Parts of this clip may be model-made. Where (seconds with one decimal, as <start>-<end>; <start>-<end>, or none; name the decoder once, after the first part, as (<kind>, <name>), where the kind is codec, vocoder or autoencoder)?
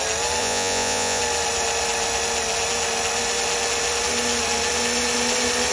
0.4-1.2 (vocoder, Vocos)